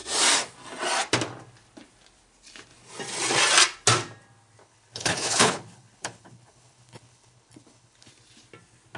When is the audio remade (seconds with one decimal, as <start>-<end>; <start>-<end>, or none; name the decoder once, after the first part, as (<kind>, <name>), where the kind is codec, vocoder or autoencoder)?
4.6-8.1 (codec, HILCodec)